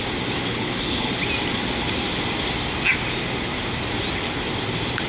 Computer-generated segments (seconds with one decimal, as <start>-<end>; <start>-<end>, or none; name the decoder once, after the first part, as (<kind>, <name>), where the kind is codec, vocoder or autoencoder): 0.5-1.1 (codec, HILCodec)